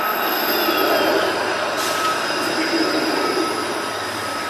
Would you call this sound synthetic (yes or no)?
yes